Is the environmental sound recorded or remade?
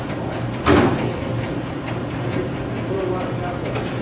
recorded